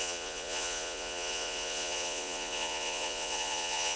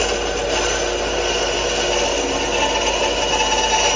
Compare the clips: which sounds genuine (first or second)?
second